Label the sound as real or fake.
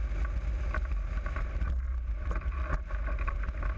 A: real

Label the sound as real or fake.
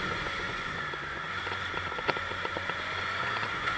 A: fake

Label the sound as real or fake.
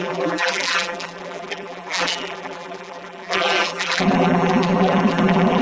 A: fake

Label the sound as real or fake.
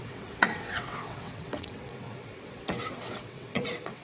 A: fake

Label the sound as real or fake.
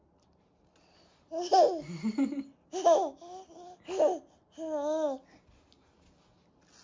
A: real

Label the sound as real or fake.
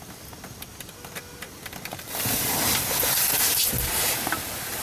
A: real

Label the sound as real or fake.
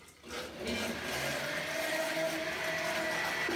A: real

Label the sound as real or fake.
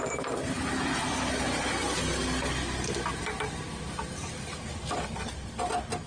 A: real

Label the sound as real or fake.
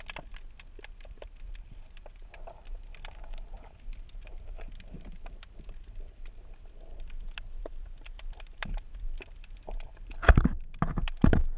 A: fake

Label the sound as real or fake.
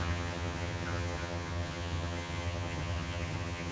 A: fake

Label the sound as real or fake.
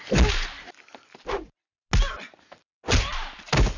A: real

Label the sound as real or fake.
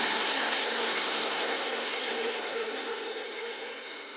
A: fake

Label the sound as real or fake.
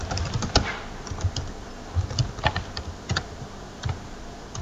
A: real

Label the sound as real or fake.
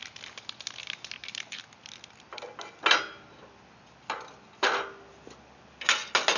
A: real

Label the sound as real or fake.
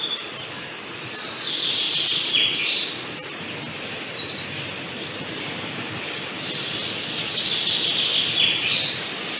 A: real